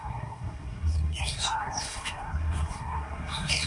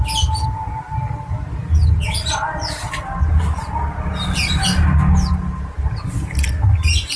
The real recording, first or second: second